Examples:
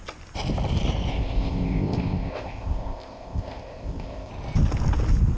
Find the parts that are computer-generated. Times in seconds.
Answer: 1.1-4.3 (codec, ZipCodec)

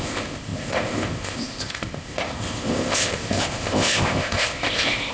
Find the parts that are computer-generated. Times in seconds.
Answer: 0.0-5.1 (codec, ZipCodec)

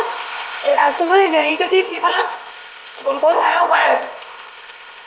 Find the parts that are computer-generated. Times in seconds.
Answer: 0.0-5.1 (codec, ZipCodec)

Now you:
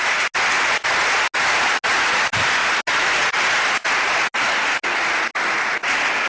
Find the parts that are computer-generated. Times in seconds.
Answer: none

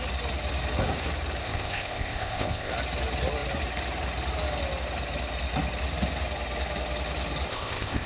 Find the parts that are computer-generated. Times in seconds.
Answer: 1.4-2.7 (codec, ZipCodec); 7.5-8.1

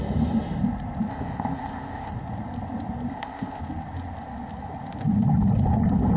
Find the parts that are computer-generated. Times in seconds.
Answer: 1.1-2.1 (codec, ZipCodec); 3.1-3.6

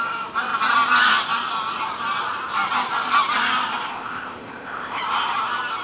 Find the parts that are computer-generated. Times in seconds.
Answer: 3.9-5.0 (codec, ZipCodec)